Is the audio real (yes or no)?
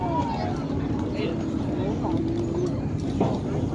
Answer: yes